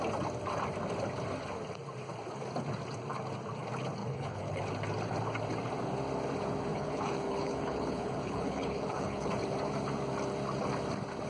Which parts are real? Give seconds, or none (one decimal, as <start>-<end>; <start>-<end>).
0.0-4.0; 4.6-6.7; 9.3-11.3